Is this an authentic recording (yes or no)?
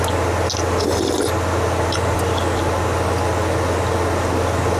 yes